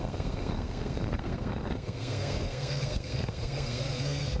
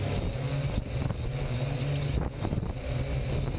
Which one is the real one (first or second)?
second